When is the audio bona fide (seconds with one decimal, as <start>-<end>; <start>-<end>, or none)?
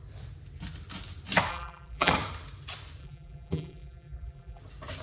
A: 0.0-1.5; 2.1-3.0; 4.6-5.0